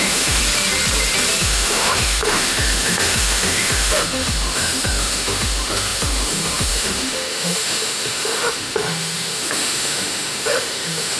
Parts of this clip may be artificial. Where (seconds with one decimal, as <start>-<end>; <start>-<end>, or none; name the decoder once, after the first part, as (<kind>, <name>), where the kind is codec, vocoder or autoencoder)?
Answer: 0.0-0.4 (autoencoder, DAC-VAE); 1.4-11.2

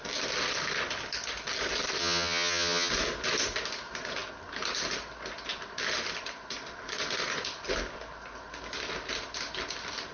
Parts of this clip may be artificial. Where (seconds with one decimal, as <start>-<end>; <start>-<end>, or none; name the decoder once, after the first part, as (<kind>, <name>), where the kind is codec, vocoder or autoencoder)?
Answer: 2.0-2.9 (vocoder, HiFi-GAN)

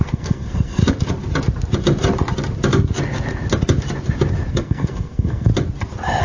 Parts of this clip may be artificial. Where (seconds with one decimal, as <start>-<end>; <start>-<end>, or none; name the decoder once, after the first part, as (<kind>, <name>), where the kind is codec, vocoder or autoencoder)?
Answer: 0.0-0.8 (codec, SNAC); 4.5-5.5

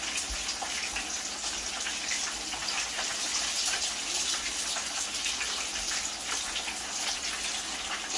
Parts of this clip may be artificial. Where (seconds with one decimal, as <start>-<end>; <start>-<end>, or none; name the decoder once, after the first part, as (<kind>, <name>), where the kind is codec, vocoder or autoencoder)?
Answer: none